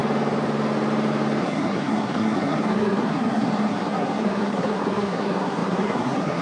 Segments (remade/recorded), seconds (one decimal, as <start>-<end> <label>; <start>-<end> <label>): 0.0-1.4 recorded; 1.4-6.4 remade